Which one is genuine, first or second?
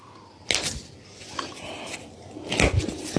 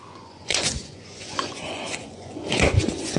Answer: first